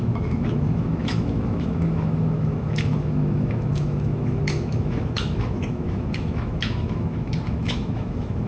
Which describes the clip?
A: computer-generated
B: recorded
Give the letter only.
A